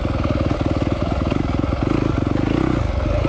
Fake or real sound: real